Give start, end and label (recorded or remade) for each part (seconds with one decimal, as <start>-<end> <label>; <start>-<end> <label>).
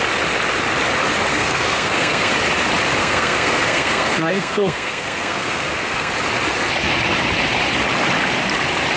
0.0-1.3 recorded; 1.3-2.3 remade; 2.3-3.0 recorded; 3.0-6.1 remade; 6.1-9.0 recorded